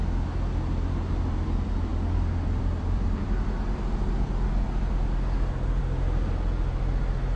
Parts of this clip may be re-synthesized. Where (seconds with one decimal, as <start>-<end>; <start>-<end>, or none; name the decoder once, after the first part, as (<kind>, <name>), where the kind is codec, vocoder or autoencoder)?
1.9-4.9 (vocoder, BigVGAN v2)